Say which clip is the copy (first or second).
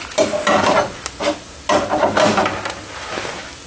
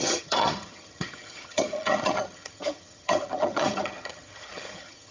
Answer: second